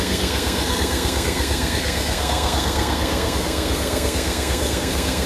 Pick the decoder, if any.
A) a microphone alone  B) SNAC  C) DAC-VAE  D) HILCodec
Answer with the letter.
B